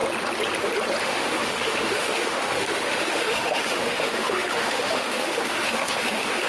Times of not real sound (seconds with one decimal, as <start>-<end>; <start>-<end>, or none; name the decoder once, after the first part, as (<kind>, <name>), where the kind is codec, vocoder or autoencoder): 1.0-6.5 (autoencoder, DAC-VAE)